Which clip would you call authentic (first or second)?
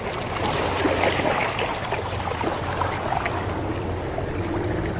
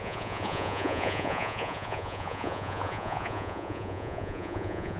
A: first